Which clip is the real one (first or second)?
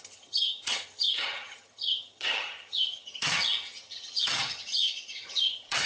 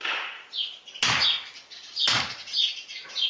second